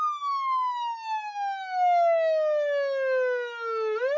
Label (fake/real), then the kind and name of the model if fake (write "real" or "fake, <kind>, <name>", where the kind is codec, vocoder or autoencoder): real